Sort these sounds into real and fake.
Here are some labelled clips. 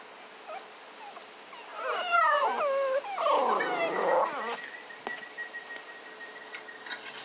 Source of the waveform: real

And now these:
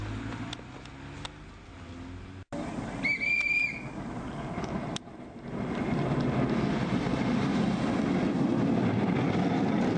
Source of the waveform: real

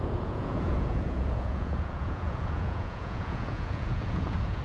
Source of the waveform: fake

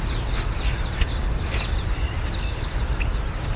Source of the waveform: real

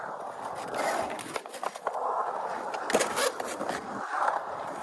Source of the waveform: real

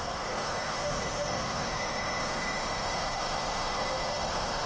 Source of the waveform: fake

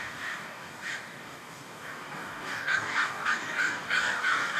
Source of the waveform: fake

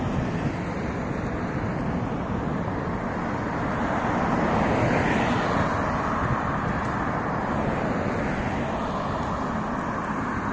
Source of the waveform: real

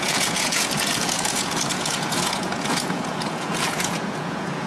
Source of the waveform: fake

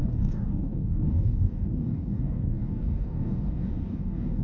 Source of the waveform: fake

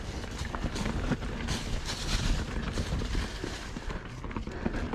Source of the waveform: real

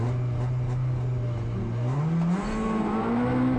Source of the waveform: real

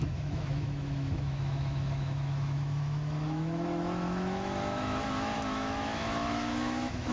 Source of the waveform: fake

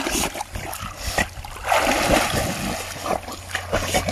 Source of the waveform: real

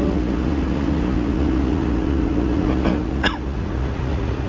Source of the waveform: fake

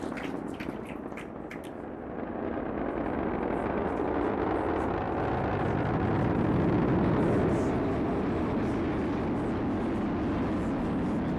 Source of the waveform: real